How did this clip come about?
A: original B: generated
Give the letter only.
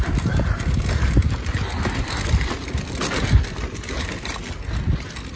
A